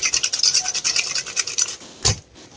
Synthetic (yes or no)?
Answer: no